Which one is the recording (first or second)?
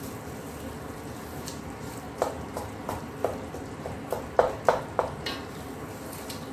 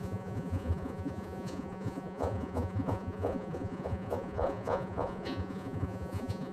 first